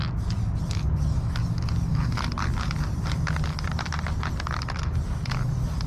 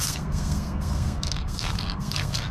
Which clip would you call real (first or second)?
first